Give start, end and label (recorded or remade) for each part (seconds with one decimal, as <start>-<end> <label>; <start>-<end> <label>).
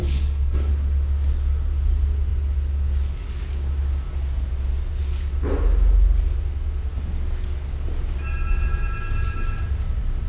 0.0-0.7 remade; 0.7-10.3 recorded